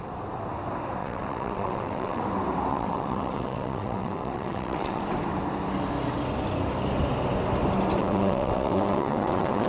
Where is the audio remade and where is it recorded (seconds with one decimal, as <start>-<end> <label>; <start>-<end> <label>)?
0.0-1.0 recorded; 1.0-2.2 remade; 2.2-2.7 recorded; 2.7-5.0 remade; 5.0-8.0 recorded; 8.0-9.7 remade